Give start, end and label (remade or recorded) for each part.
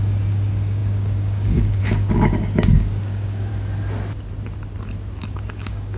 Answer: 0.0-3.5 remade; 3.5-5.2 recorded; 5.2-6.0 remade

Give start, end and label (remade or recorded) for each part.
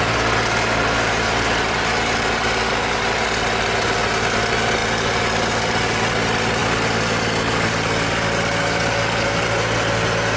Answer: 0.0-10.4 recorded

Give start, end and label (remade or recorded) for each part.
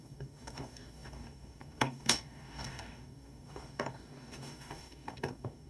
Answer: 0.0-5.7 remade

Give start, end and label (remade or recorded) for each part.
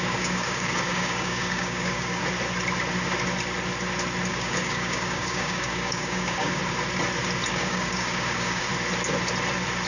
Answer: 0.0-2.2 remade; 2.2-4.3 recorded; 4.3-6.6 remade; 6.6-7.5 recorded; 7.5-8.7 remade; 8.7-9.9 recorded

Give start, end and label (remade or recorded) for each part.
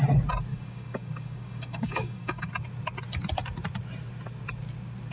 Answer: 0.0-0.5 recorded; 0.5-2.5 remade; 2.5-5.1 recorded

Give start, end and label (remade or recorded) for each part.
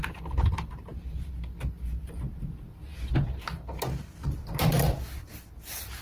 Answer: 0.0-6.0 recorded